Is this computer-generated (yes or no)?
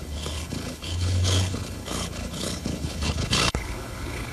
yes